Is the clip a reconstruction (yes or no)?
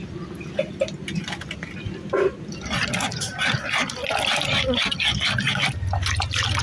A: no